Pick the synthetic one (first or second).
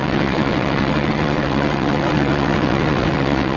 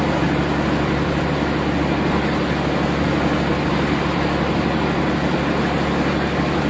first